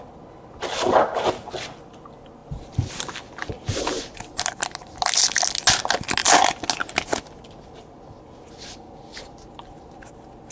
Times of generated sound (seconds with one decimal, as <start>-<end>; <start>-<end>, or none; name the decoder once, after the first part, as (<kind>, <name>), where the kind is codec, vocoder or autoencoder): none